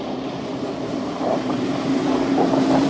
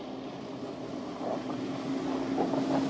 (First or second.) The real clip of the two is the second